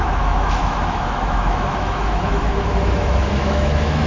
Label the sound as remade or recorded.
remade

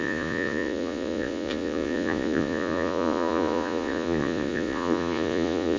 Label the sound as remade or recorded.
remade